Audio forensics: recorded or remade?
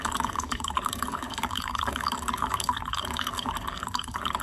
remade